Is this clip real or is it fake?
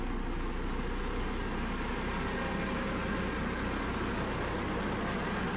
real